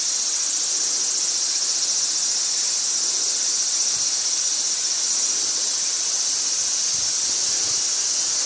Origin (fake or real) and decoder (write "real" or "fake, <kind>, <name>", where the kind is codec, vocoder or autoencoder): real